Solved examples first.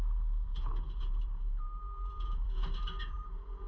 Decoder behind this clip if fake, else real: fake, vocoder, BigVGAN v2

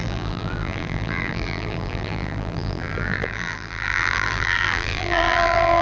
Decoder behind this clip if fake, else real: fake, vocoder, BigVGAN v2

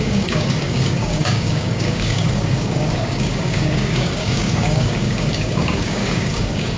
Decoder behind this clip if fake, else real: fake, codec, DAC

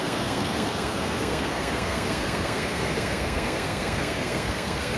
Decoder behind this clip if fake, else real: fake, codec, SNAC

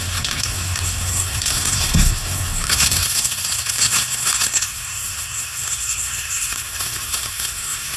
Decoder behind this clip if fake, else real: fake, codec, SNAC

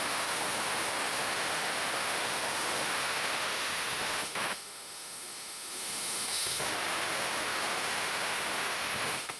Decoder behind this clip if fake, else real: fake, autoencoder, DAC-VAE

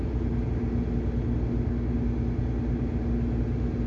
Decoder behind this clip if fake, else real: real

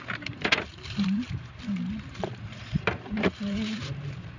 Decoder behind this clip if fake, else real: fake, vocoder, BigVGAN v2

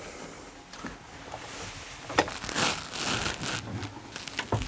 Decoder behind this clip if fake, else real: real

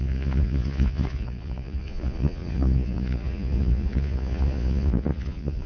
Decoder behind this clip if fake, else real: fake, vocoder, Vocos